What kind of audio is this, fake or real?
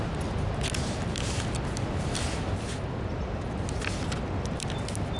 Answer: real